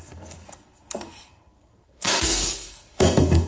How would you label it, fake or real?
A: fake